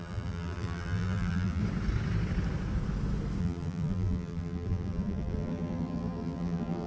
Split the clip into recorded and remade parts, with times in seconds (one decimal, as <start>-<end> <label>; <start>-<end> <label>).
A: 0.0-1.6 remade; 1.6-3.4 recorded; 3.4-6.9 remade